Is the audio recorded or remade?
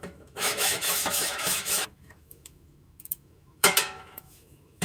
remade